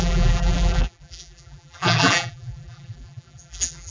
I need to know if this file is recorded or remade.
remade